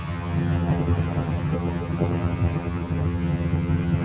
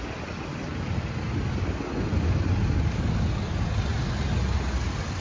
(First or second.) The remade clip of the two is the first